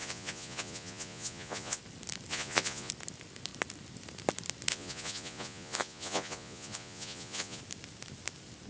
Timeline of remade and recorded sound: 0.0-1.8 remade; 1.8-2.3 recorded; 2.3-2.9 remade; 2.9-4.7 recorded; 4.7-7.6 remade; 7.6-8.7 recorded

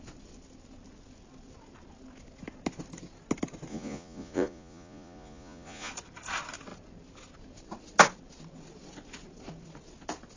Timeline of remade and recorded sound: 0.0-3.7 recorded; 3.7-5.9 remade; 5.9-10.4 recorded

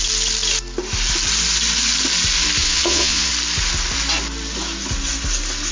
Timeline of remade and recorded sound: 0.0-2.6 recorded; 2.6-3.3 remade; 3.3-5.7 recorded

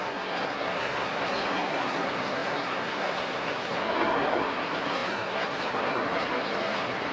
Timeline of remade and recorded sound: 0.0-7.1 remade

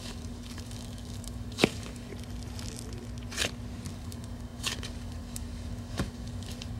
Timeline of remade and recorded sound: 0.0-2.1 remade; 2.1-3.9 recorded; 3.9-6.8 remade